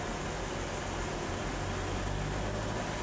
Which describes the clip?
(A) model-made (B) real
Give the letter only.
B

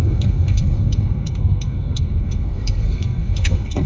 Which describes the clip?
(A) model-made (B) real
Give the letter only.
A